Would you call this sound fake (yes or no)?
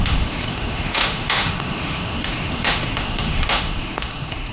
yes